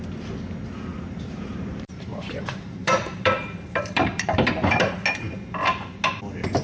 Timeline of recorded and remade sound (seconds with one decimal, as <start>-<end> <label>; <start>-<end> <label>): 0.0-0.9 recorded; 0.9-4.9 remade; 4.9-6.6 recorded